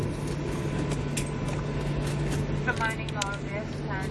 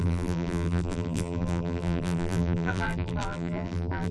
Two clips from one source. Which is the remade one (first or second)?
second